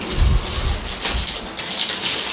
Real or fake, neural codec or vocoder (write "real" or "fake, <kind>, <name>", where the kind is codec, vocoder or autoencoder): real